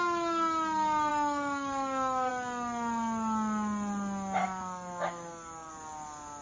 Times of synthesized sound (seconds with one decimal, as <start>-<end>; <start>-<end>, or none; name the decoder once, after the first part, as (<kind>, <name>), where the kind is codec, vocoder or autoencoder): 1.1-2.3 (codec, DAC); 4.4-5.7